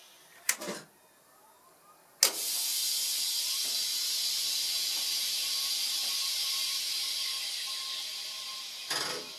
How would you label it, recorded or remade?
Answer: recorded